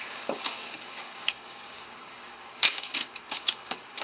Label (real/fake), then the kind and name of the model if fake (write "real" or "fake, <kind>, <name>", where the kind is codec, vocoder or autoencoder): fake, codec, DAC